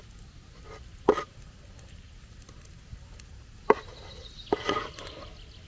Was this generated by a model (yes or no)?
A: no